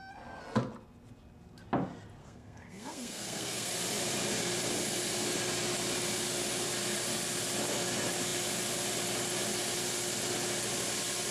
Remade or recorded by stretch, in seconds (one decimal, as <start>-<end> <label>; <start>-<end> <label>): 0.0-2.2 recorded; 2.2-3.7 remade; 3.7-11.3 recorded